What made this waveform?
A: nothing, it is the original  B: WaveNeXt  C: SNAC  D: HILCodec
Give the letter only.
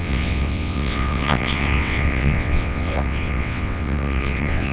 B